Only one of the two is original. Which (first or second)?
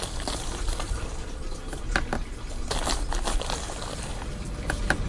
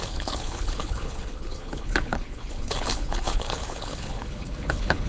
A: first